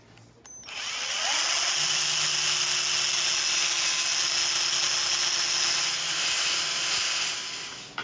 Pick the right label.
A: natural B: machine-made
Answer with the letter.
A